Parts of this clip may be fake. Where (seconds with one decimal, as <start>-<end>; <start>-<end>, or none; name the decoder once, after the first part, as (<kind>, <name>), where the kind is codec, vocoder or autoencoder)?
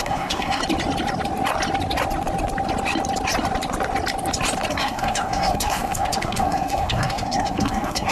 0.0-0.6 (codec, SNAC); 4.7-8.1